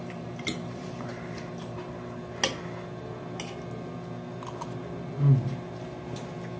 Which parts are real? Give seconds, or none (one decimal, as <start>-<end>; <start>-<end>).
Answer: 1.8-6.6